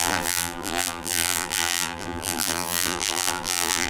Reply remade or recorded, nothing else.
remade